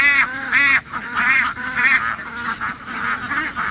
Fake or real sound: real